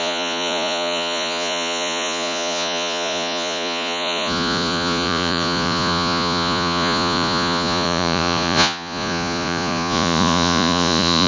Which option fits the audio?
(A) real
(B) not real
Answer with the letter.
B